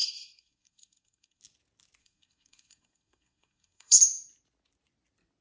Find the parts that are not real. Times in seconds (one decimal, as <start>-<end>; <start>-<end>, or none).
0.0-1.4; 2.0-4.0